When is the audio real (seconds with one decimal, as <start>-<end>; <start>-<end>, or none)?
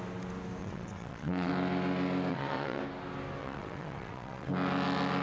0.0-0.6; 1.5-2.3; 2.8-3.4; 4.5-5.2